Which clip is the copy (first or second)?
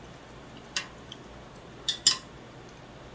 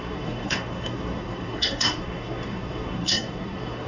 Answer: second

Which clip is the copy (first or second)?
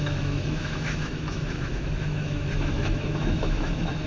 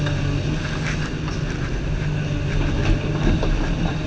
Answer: first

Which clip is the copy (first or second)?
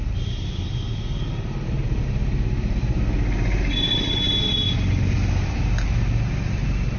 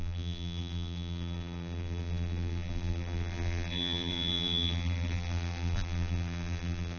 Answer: second